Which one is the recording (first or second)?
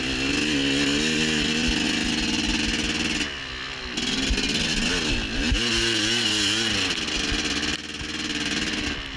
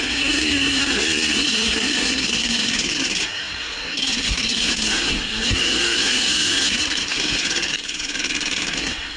first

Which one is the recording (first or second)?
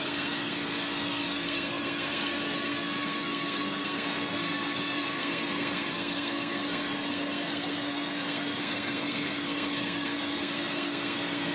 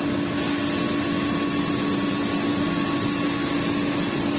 second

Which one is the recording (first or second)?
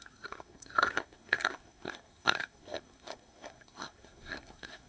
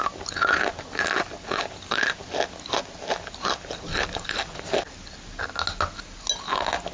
second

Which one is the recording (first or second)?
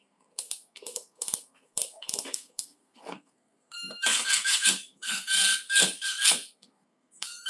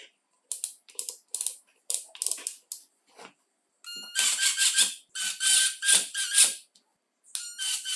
second